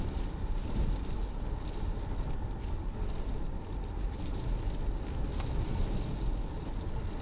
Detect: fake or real real